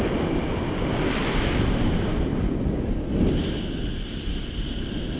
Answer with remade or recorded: recorded